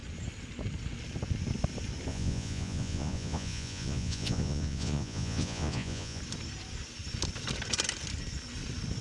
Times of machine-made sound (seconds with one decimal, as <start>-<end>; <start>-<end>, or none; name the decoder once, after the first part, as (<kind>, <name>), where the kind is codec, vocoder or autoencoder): 2.1-6.2 (vocoder, Vocos)